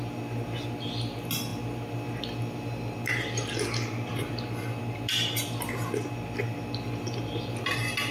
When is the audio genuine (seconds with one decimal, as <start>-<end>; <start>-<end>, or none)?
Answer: 0.0-8.1